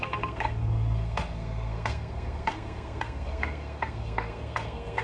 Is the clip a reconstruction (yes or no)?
yes